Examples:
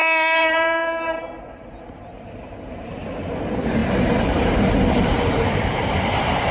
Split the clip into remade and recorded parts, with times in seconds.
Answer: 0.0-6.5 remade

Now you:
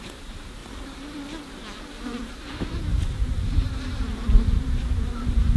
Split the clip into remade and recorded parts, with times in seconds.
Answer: 0.0-0.6 remade; 0.6-2.0 recorded; 2.0-5.6 remade

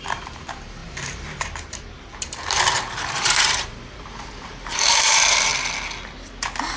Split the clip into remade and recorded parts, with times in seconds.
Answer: 0.0-5.5 remade; 5.5-6.8 recorded

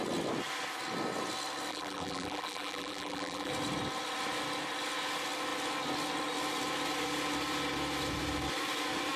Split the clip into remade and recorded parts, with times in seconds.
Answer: 0.0-1.7 recorded; 1.7-3.5 remade; 3.5-9.2 recorded

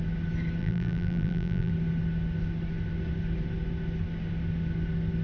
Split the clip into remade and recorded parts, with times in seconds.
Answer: 0.0-0.6 recorded; 0.6-1.7 remade; 1.7-5.2 recorded

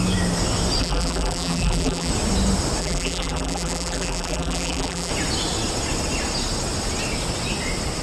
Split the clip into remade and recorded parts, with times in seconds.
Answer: 0.0-0.8 recorded; 0.8-2.1 remade; 2.1-2.8 recorded; 2.8-5.1 remade; 5.1-8.0 recorded

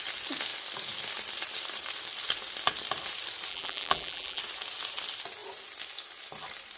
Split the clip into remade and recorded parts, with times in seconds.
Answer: 0.0-3.5 recorded; 3.5-4.4 remade; 4.4-6.8 recorded

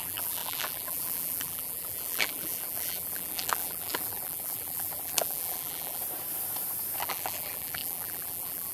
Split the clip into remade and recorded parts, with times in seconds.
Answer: 0.0-6.0 remade; 6.0-7.0 recorded; 7.0-8.7 remade